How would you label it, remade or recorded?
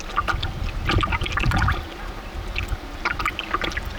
recorded